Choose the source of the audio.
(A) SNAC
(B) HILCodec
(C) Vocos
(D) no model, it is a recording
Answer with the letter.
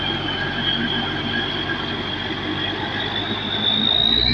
D